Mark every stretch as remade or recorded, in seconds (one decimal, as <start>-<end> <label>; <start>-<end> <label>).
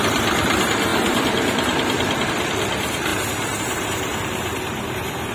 0.0-3.1 remade; 3.1-3.6 recorded; 3.6-5.3 remade